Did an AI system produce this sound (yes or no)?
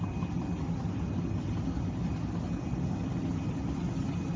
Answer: no